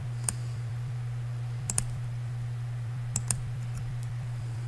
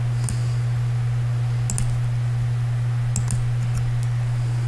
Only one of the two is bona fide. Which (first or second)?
second